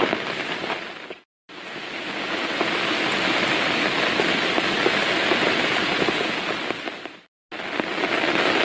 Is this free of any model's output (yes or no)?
yes